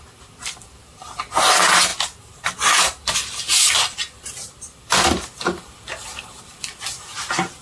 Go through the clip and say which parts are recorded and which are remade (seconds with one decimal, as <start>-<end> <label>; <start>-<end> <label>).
0.0-1.9 recorded; 1.9-6.5 remade; 6.5-7.6 recorded